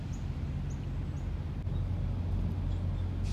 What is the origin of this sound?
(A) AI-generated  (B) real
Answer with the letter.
B